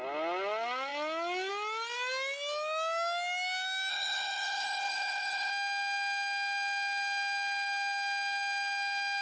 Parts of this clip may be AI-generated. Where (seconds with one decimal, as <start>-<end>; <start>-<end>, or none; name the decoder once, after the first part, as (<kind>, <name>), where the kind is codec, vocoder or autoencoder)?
3.9-5.5 (codec, HILCodec)